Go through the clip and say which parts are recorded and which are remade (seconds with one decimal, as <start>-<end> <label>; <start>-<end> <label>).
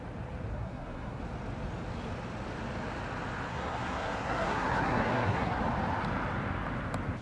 0.0-0.5 recorded; 0.5-1.2 remade; 1.2-3.5 recorded; 3.5-5.6 remade; 5.6-7.2 recorded